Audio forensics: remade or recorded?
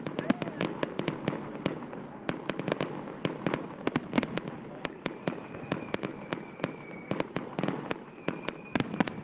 recorded